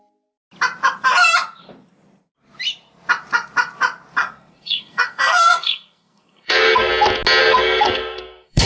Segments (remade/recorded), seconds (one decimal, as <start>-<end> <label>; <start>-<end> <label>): 0.0-4.2 recorded; 4.2-6.9 remade; 6.9-7.4 recorded; 7.4-8.7 remade